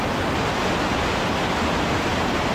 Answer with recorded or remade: recorded